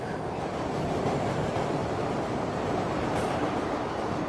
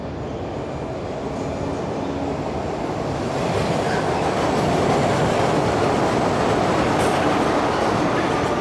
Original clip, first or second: second